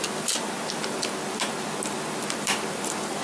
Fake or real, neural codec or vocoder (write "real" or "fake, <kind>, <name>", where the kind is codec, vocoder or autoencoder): real